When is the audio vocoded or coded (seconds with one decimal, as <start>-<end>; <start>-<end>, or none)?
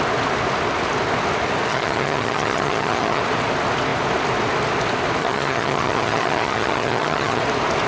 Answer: 1.7-3.2; 5.2-7.4